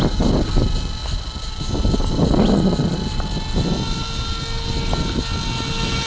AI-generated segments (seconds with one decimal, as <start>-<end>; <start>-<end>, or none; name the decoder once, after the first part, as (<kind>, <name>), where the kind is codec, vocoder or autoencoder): none